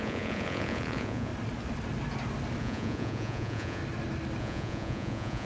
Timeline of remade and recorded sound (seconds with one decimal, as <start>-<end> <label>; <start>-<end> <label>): 0.0-1.3 remade; 1.3-2.6 recorded; 2.6-3.8 remade; 3.8-4.4 recorded; 4.4-5.5 remade